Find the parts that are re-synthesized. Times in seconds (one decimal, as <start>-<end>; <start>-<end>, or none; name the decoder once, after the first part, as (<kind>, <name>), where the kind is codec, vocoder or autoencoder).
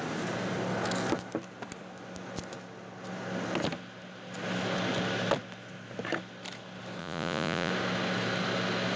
7.0-7.7 (vocoder, Vocos)